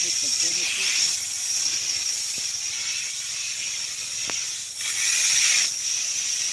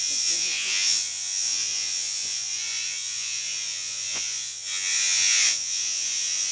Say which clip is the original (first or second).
first